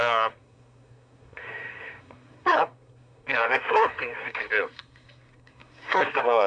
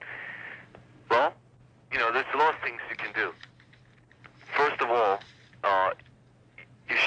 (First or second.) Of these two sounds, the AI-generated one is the first